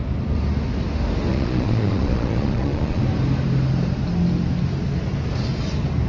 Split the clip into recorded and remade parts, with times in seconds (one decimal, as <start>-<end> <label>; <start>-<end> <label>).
0.0-1.3 recorded; 1.3-3.0 remade; 3.0-6.1 recorded